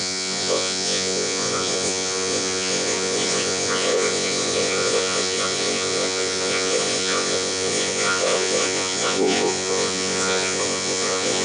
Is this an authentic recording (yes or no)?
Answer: no